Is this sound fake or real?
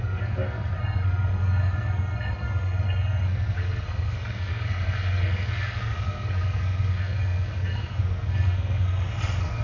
fake